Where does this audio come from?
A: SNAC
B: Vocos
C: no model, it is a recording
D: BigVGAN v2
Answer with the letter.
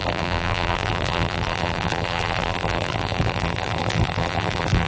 D